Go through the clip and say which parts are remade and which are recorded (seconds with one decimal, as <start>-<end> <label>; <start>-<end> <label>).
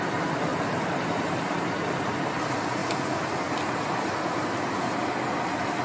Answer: 0.0-0.5 recorded; 0.5-1.7 remade; 1.7-5.8 recorded